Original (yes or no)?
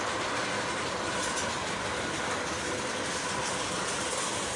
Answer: yes